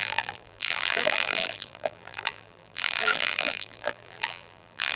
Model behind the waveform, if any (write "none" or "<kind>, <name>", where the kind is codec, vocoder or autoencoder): vocoder, BigVGAN v2